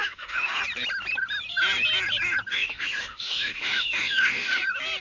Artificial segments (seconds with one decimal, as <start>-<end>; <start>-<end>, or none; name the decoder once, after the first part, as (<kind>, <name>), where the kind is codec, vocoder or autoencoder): 0.0-0.6 (autoencoder, DAC-VAE); 2.5-4.6